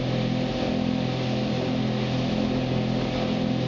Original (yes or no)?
yes